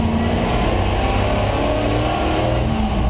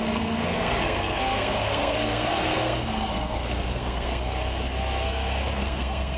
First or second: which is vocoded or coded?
second